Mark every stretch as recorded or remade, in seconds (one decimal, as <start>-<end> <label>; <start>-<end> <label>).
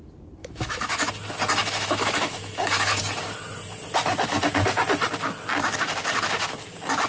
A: 0.0-0.4 recorded; 0.4-1.1 remade; 1.1-1.6 recorded; 1.6-3.0 remade; 3.0-7.1 recorded